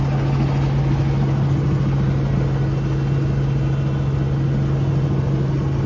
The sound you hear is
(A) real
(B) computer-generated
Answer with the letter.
A